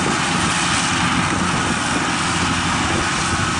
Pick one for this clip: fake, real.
real